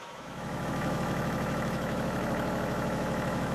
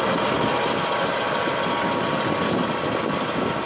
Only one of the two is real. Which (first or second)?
second